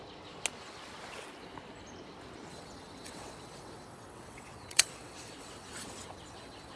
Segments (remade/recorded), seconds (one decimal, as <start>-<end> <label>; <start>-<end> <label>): 0.0-2.5 recorded; 2.5-6.8 remade